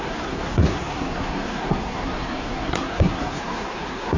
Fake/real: fake